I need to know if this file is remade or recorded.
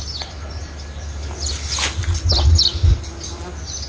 recorded